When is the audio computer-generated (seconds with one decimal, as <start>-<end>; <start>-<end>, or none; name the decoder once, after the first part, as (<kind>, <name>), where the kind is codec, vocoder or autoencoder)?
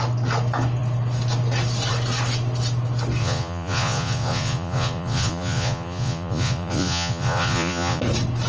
3.2-8.0 (vocoder, Vocos)